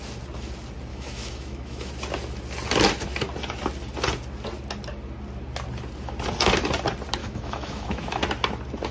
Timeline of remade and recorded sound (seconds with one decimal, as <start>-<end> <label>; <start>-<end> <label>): 0.0-0.9 recorded; 0.9-1.9 remade; 1.9-7.2 recorded; 7.2-8.2 remade; 8.2-8.9 recorded